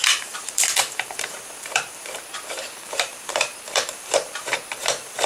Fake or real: fake